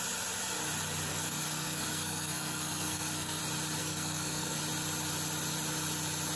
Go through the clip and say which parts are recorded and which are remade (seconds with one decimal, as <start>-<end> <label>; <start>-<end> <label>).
0.0-1.1 recorded; 1.1-3.4 remade; 3.4-3.8 recorded; 3.8-4.6 remade; 4.6-6.4 recorded